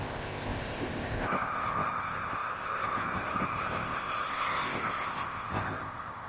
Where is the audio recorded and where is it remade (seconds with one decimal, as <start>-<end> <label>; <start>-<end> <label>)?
0.0-6.3 remade